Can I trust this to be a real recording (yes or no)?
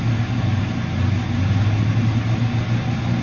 yes